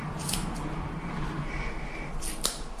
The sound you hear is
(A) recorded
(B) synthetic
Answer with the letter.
A